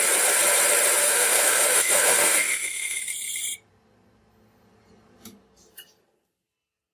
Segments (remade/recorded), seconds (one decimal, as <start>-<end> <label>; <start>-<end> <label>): 0.0-1.0 recorded; 1.0-3.0 remade; 3.0-6.9 recorded

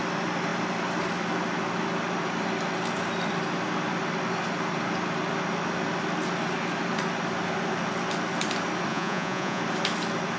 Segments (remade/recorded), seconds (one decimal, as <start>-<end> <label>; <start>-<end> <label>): 0.0-8.9 recorded; 8.9-9.6 remade; 9.6-10.4 recorded

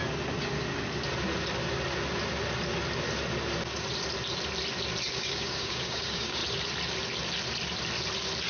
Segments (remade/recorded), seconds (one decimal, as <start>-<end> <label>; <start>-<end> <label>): 0.0-5.1 recorded; 5.1-6.4 remade; 6.4-8.5 recorded

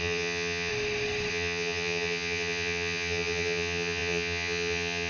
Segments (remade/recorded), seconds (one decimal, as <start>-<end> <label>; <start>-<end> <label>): 0.0-0.7 remade; 0.7-1.3 recorded; 1.3-5.1 remade

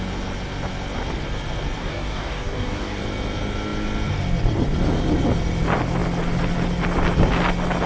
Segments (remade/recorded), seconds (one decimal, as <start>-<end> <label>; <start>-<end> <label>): 0.0-1.8 recorded; 1.8-3.0 remade; 3.0-7.9 recorded

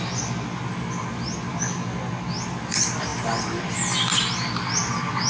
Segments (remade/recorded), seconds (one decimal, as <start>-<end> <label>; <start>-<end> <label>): 0.0-3.1 recorded; 3.1-3.7 remade; 3.7-5.3 recorded

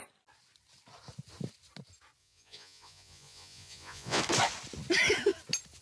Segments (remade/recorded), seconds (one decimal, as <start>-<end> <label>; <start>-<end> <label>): 0.0-2.2 recorded; 2.2-4.2 remade; 4.2-5.8 recorded

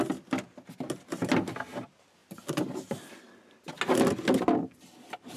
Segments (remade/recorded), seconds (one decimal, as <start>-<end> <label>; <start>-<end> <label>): 0.0-2.2 recorded; 2.2-2.9 remade; 2.9-5.4 recorded